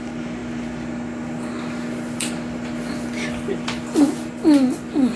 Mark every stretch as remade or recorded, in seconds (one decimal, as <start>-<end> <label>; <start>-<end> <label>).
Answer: 0.0-5.2 recorded